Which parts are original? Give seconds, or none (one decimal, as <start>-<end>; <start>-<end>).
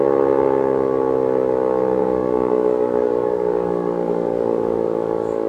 0.0-2.0